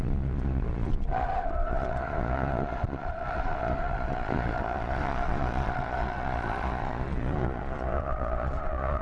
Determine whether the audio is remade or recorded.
remade